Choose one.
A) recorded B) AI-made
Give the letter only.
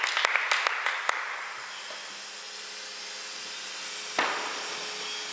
A